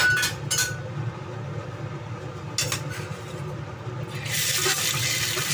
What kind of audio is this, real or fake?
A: real